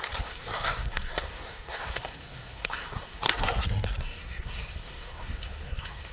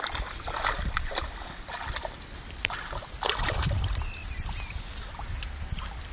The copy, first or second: first